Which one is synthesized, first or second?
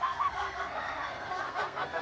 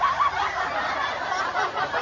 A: first